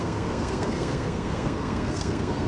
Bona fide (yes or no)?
no